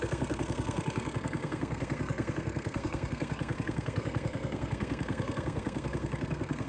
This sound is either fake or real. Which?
fake